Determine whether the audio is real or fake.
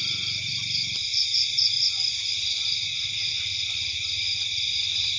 fake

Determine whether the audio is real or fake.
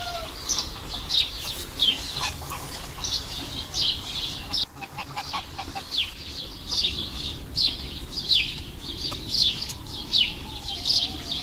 fake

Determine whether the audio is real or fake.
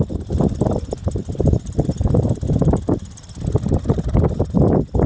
real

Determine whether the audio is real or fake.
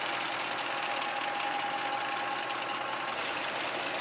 real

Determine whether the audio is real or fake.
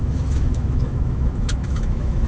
fake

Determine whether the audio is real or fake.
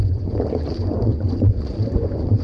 fake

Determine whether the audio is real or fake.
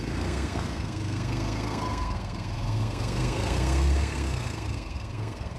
fake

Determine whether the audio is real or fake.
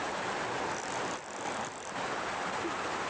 real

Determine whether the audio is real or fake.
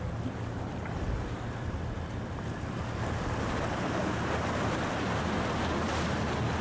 real